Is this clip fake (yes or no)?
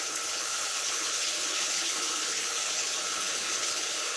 yes